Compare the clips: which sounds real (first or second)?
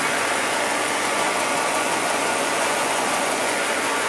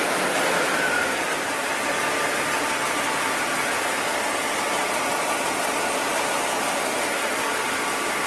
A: second